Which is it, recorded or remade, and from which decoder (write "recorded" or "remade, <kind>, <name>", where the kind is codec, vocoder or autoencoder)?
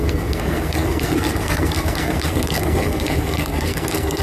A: remade, codec, SNAC